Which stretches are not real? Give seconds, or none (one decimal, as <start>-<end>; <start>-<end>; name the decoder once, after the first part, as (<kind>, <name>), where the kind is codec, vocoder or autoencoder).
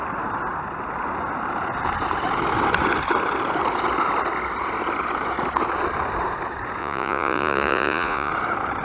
6.8-8.3 (vocoder, Vocos)